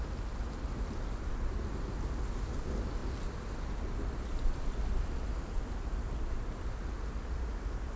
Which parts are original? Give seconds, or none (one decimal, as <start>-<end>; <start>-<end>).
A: 0.0-8.0